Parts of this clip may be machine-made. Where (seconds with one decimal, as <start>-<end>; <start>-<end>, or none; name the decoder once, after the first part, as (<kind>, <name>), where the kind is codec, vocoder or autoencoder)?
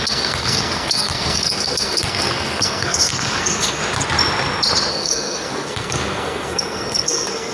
0.0-3.8 (codec, SNAC); 4.9-7.5